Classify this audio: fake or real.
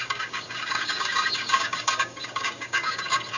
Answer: fake